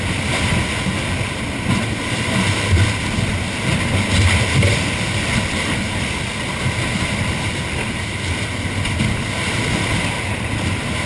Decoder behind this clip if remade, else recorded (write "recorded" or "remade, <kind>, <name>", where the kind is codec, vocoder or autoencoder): recorded